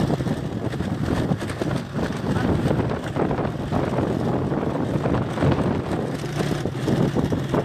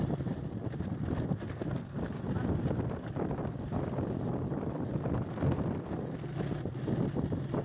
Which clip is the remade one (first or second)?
second